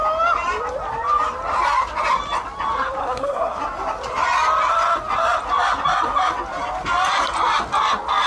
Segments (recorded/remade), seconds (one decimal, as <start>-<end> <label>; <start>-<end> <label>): 0.0-3.0 recorded; 3.0-3.6 remade; 3.6-8.3 recorded